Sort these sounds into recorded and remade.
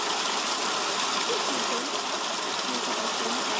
recorded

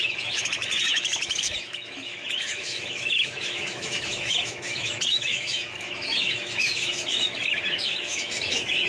remade